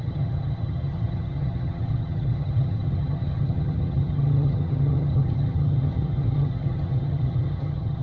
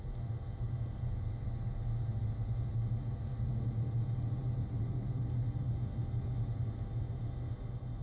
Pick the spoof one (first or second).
first